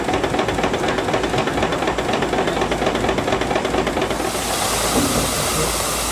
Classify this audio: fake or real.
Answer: real